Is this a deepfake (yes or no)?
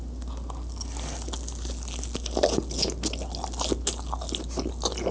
no